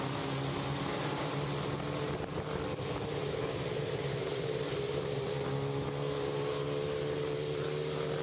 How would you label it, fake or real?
real